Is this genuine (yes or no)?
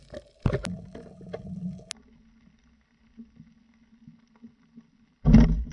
yes